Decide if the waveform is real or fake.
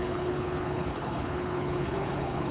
fake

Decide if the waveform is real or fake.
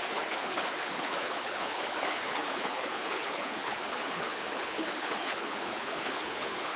fake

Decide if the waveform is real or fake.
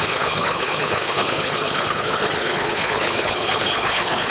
fake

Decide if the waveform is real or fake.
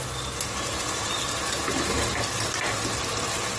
real